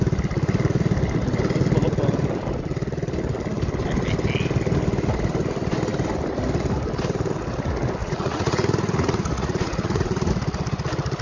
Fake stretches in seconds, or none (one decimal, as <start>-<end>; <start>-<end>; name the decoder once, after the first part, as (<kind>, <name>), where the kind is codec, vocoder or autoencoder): 8.0-10.3 (vocoder, Vocos)